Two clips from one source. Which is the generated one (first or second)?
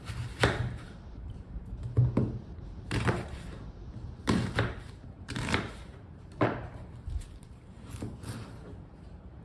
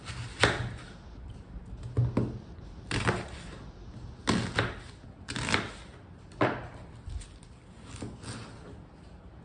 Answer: first